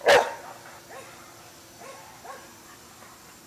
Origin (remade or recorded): recorded